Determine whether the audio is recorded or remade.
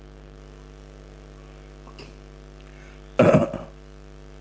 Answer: recorded